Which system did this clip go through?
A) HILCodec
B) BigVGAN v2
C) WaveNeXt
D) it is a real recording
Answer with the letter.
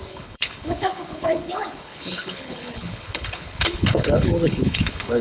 A